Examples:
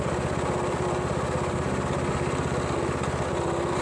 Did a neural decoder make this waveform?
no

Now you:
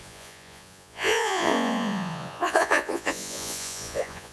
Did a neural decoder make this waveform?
yes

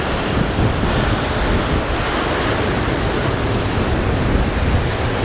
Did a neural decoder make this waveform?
no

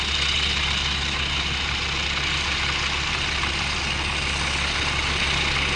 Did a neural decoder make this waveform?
no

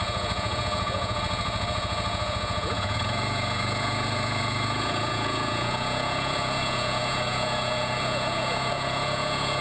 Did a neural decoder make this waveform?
yes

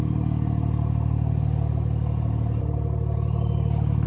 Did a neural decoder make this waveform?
no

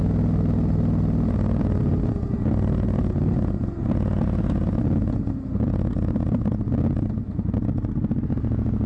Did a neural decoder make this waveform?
no